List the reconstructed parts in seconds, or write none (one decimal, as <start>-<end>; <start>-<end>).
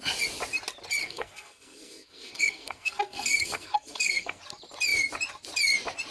1.0-4.4